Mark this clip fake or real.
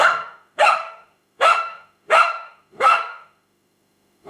fake